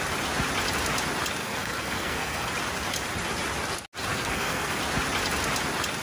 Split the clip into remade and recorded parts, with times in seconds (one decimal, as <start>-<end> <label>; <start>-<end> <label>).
0.0-1.4 recorded; 1.4-2.5 remade; 2.5-4.1 recorded; 4.1-4.8 remade; 4.8-6.0 recorded